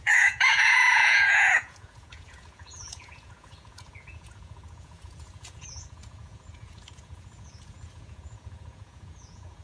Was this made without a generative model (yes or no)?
no